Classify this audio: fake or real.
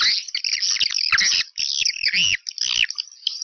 real